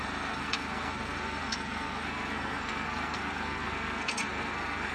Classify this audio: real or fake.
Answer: fake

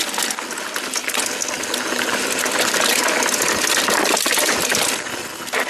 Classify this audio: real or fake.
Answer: real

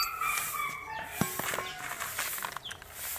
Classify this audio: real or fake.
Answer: real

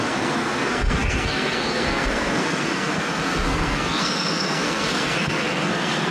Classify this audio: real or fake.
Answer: fake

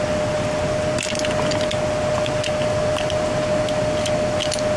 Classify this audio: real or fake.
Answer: real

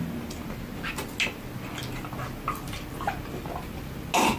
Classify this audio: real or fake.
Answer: real